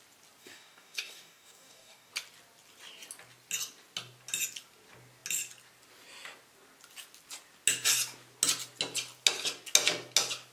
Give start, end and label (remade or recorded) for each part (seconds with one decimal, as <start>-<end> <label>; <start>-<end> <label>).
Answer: 0.0-0.4 recorded; 0.4-2.1 remade; 2.1-10.5 recorded